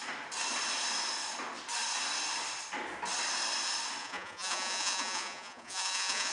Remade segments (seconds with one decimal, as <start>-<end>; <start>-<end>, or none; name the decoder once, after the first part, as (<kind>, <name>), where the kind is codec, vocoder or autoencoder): 4.0-6.3 (vocoder, Vocos)